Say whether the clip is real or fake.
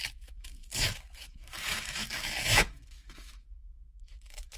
fake